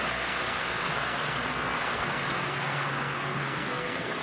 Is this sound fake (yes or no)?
yes